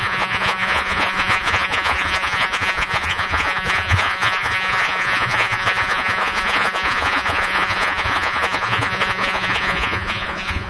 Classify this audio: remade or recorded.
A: remade